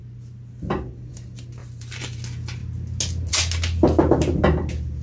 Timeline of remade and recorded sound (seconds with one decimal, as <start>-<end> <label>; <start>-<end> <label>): 0.0-1.6 recorded; 1.6-2.2 remade; 2.2-5.0 recorded

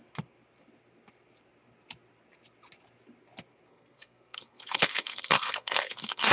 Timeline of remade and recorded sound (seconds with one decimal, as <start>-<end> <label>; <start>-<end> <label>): 0.0-3.7 recorded; 3.7-6.3 remade

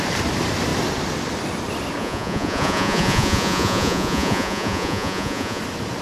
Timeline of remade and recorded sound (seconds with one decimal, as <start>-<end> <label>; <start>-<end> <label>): 0.0-2.0 recorded; 2.0-5.6 remade; 5.6-6.0 recorded

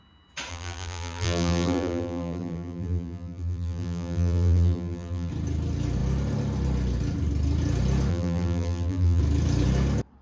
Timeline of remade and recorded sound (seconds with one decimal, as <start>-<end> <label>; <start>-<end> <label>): 0.0-0.5 recorded; 0.5-5.3 remade; 5.3-8.1 recorded; 8.1-9.2 remade; 9.2-10.2 recorded